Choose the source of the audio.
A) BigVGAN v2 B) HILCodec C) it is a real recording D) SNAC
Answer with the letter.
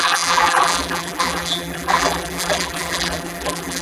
A